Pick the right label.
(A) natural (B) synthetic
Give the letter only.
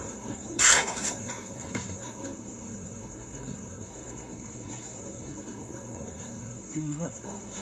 B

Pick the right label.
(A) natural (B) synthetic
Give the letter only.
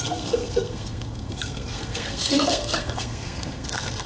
B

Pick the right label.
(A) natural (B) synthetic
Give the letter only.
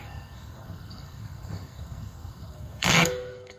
B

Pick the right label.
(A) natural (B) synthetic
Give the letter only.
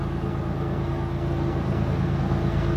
B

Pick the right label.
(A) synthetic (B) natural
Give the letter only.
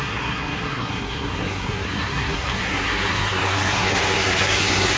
A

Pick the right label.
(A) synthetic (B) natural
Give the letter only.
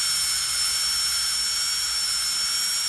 B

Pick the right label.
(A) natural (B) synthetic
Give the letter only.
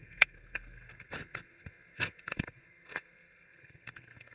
B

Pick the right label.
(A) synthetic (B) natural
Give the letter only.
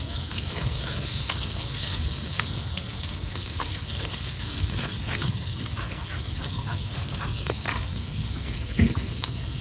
A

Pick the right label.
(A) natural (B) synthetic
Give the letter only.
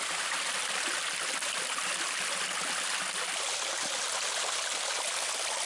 A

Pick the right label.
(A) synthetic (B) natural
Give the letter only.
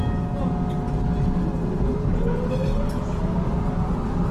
B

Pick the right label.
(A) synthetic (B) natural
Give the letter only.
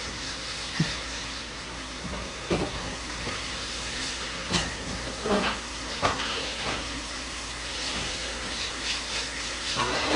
A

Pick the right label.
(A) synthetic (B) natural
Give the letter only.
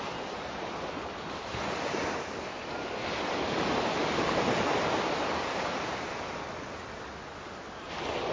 B